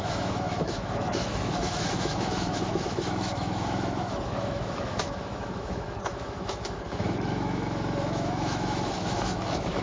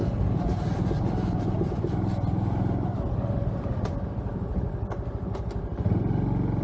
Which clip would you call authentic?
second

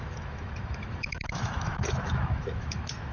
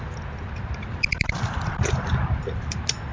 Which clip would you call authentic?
second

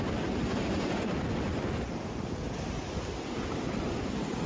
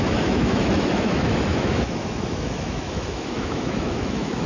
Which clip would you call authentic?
first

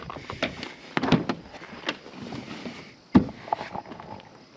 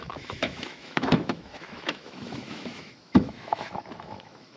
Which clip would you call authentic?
first